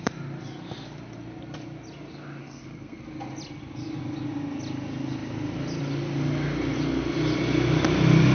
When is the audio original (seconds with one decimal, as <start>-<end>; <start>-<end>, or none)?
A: 0.0-2.4; 3.0-8.3